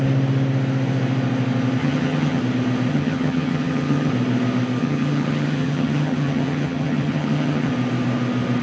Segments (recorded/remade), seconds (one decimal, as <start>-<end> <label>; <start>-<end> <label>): 0.0-1.8 recorded; 1.8-2.4 remade; 2.4-2.9 recorded; 2.9-4.1 remade; 4.1-4.8 recorded; 4.8-7.7 remade; 7.7-8.6 recorded